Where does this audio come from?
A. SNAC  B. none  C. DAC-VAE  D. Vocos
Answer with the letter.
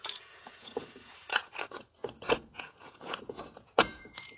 D